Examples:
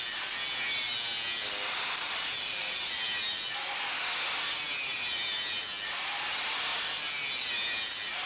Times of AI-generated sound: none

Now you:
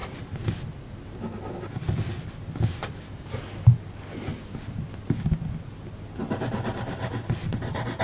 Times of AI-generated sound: none

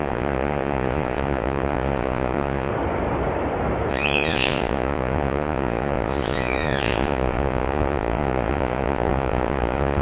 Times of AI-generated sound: 0.0-2.7 (vocoder, Vocos); 3.9-10.0

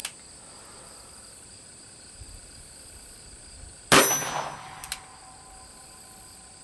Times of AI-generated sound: none

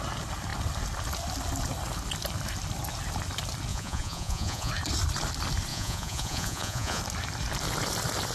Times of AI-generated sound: 3.7-4.7 (vocoder, Vocos); 5.7-7.0

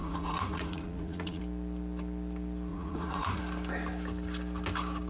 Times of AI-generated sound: 0.0-1.4 (vocoder, Vocos); 2.7-3.4